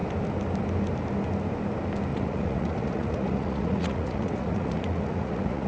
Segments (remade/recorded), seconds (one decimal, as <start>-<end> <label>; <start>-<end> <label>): 0.0-2.1 recorded; 2.1-5.7 remade